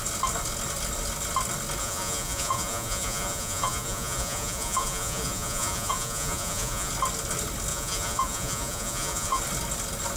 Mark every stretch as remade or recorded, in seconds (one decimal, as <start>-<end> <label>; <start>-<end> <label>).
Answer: 0.0-1.8 recorded; 1.8-6.9 remade; 6.9-7.7 recorded; 7.7-9.4 remade; 9.4-10.2 recorded